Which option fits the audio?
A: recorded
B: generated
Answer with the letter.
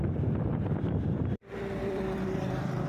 B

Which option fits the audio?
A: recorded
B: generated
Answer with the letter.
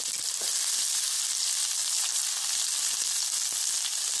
A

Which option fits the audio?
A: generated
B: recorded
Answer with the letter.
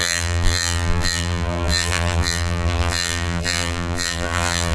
A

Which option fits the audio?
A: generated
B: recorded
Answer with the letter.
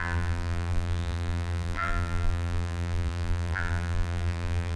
A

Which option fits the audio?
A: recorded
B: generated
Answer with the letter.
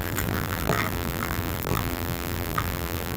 B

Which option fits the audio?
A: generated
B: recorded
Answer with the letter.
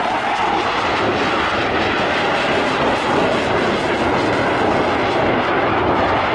B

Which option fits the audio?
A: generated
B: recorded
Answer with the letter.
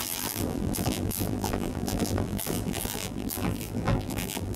A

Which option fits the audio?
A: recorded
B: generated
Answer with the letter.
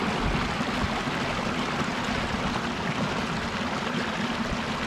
A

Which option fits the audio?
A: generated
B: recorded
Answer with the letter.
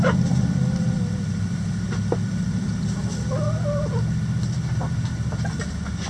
A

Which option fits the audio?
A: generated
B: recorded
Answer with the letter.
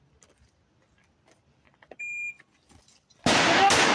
A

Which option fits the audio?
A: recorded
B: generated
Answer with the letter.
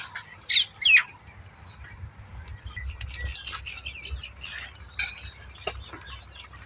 A